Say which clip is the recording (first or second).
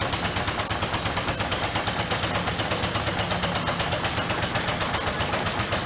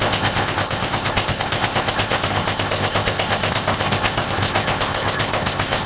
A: first